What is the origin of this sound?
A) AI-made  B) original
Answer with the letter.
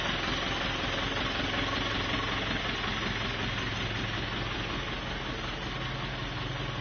B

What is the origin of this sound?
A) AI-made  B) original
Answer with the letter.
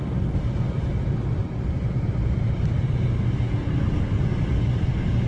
B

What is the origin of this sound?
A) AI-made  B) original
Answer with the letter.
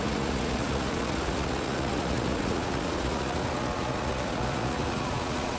A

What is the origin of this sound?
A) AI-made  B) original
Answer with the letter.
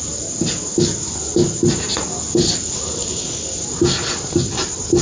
B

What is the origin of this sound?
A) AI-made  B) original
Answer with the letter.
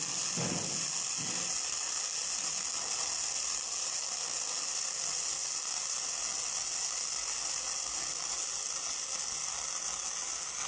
B